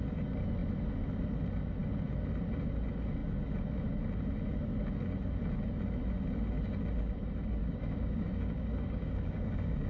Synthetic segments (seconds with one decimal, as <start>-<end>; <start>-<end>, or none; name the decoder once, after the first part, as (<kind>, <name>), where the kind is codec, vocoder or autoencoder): 7.6-9.9 (codec, DAC)